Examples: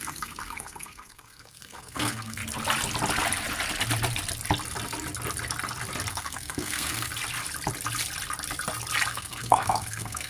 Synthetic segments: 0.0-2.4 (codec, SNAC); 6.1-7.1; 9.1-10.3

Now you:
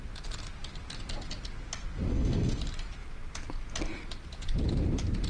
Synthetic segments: 2.1-2.6 (codec, SNAC)

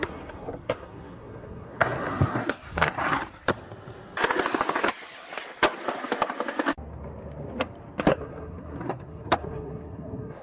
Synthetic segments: 0.0-3.0 (codec, SNAC); 8.1-10.4

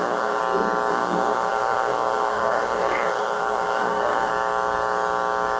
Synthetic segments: 0.0-0.4 (codec, SNAC); 0.9-4.3

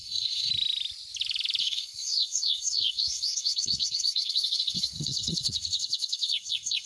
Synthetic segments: 0.0-0.5 (codec, SNAC); 1.6-6.9

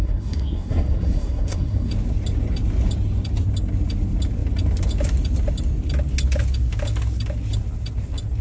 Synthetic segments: 0.0-1.9 (codec, SNAC)